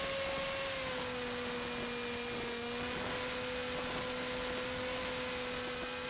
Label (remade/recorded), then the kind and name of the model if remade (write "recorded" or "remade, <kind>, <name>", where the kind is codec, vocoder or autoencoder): recorded